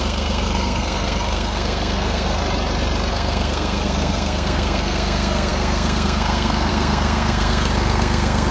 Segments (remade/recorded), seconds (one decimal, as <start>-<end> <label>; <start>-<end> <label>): 0.0-2.4 remade; 2.4-3.1 recorded; 3.1-8.5 remade